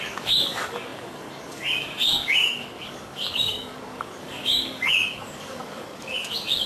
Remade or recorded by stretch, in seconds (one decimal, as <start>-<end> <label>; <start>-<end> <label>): 0.0-6.7 remade